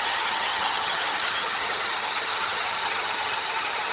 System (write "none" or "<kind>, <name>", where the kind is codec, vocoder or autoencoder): vocoder, HiFi-GAN